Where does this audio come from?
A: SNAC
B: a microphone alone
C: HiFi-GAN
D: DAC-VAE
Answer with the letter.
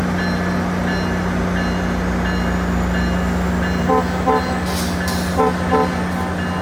B